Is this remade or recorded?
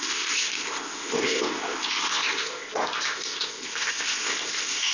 remade